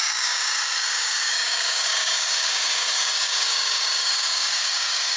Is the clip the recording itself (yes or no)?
no